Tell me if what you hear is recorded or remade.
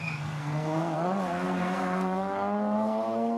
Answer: remade